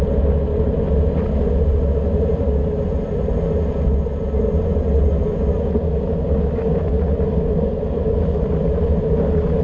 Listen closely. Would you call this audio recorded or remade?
recorded